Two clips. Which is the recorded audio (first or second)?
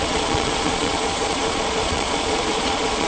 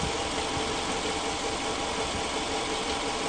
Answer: second